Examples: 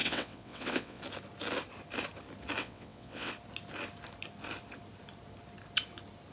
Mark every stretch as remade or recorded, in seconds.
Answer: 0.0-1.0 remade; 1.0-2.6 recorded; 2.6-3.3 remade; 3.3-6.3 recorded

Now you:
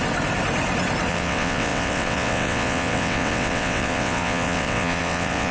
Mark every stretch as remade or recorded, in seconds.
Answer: 0.0-1.1 recorded; 1.1-5.5 remade

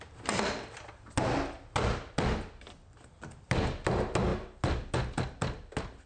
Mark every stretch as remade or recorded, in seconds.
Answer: 0.0-6.1 recorded

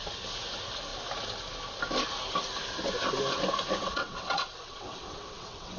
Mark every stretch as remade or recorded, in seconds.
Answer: 0.0-3.8 recorded; 3.8-5.8 remade

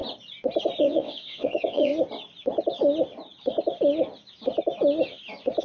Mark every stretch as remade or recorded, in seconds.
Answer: 0.0-0.8 recorded; 0.8-1.9 remade; 1.9-5.6 recorded

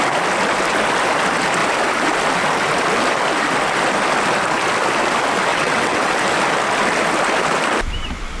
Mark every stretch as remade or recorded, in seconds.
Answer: 0.0-5.5 recorded; 5.5-6.1 remade; 6.1-8.4 recorded

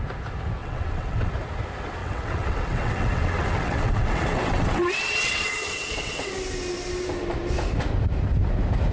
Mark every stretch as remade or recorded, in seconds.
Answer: 0.0-0.6 recorded; 0.6-1.3 remade; 1.3-2.0 recorded; 2.0-6.3 remade; 6.3-8.9 recorded